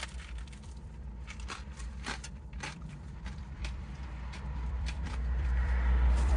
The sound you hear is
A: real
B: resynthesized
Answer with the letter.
B